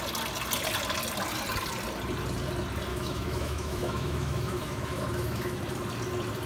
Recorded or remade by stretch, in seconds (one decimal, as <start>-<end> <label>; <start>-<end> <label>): 0.0-2.9 recorded; 2.9-5.6 remade; 5.6-6.5 recorded